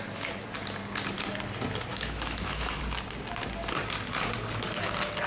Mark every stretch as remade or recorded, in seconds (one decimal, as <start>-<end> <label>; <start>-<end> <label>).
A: 0.0-1.9 recorded; 1.9-2.8 remade; 2.8-5.3 recorded